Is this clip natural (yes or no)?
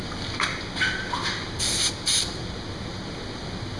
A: yes